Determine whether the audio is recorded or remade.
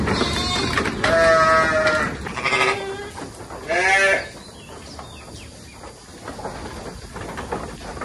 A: recorded